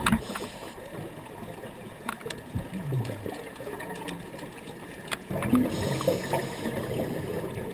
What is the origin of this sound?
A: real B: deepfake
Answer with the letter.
B